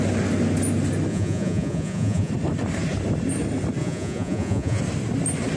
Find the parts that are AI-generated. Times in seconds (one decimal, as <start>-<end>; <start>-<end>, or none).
1.1-2.3; 3.8-4.8